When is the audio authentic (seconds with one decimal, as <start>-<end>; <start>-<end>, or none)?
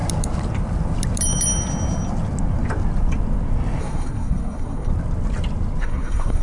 0.0-3.8; 4.9-5.8